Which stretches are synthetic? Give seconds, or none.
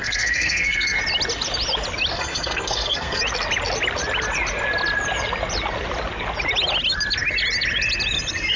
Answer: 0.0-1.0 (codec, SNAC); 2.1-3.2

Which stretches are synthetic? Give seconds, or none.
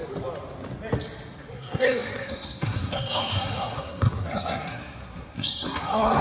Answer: 1.5-6.2 (codec, SNAC)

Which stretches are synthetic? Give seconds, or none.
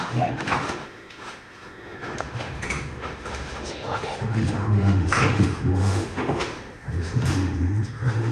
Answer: 0.0-8.3 (autoencoder, DAC-VAE)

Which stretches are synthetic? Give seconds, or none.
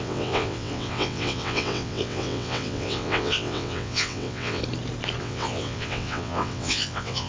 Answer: 0.0-4.6 (vocoder, WaveNeXt); 5.2-7.3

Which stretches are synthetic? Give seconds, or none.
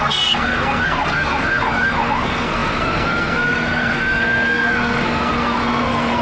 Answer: 0.0-6.2 (codec, SNAC)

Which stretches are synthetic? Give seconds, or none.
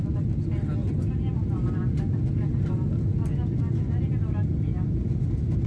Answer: none